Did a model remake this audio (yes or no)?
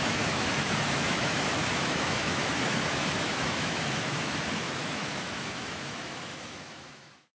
yes